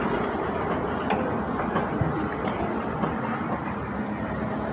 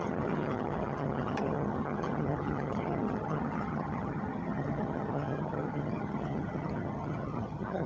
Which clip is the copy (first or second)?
second